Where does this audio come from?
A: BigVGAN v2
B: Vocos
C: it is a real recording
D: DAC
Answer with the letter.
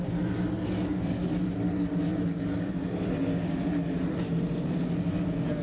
C